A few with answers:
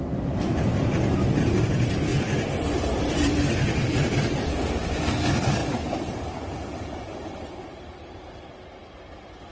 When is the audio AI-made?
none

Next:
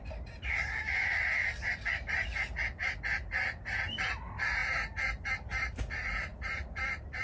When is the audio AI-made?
none

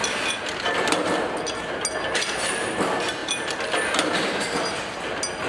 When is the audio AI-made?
none

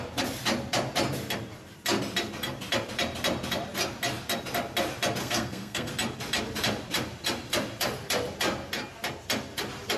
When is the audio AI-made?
5.2-5.9 (codec, SNAC)

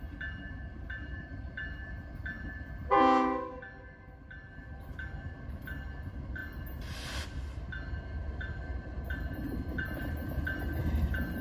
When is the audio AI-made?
0.6-1.5 (vocoder, BigVGAN v2); 8.7-10.8